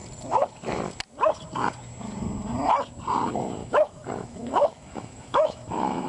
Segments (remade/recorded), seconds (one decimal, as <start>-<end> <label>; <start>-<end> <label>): 0.0-3.6 recorded; 3.6-6.1 remade